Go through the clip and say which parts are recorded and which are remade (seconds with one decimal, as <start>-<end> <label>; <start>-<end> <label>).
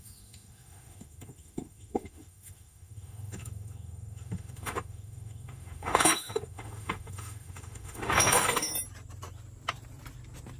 0.0-8.7 remade; 8.7-10.6 recorded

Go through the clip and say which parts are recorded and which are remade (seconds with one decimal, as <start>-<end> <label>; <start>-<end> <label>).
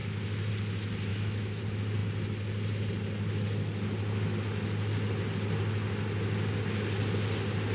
0.0-1.1 recorded; 1.1-1.6 remade; 1.6-7.7 recorded